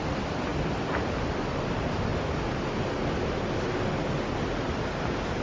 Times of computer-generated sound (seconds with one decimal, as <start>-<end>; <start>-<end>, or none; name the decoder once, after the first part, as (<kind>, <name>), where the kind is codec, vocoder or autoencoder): 0.0-0.5 (vocoder, BigVGAN v2); 1.5-2.1